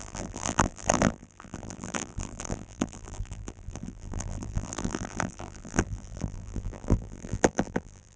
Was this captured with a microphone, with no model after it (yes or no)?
no